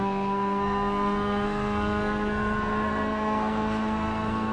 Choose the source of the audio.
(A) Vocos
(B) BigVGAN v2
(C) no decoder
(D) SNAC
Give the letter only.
D